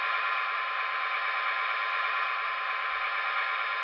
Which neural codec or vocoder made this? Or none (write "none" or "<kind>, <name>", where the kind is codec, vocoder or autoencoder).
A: none